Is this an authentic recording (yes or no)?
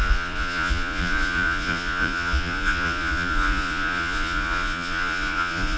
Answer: no